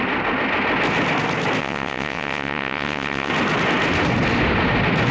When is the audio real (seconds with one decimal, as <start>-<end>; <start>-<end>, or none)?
0.0-1.6; 3.3-5.1